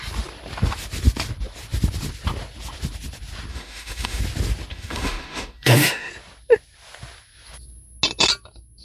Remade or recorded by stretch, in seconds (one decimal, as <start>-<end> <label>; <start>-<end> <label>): 0.0-3.5 recorded; 3.5-4.2 remade; 4.2-4.7 recorded; 4.7-6.1 remade; 6.1-8.8 recorded